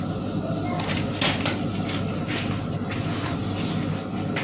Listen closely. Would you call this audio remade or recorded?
recorded